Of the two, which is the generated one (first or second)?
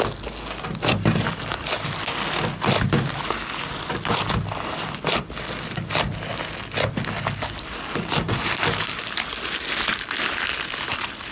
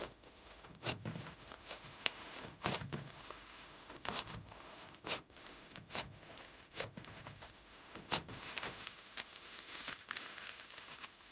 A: second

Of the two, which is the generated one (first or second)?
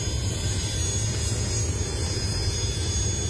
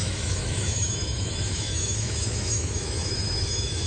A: second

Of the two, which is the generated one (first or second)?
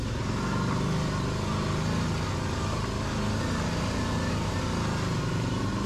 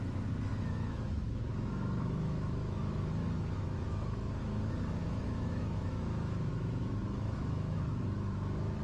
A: second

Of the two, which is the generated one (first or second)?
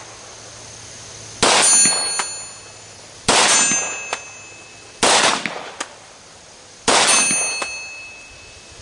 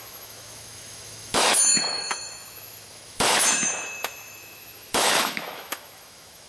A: second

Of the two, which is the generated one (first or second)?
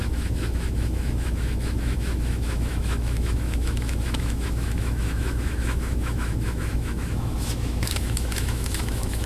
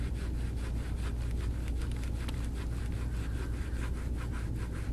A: first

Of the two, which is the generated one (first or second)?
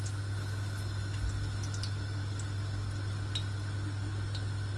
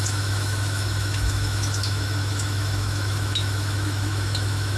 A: second